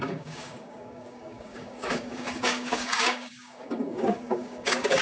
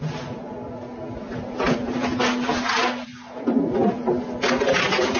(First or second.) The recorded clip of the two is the second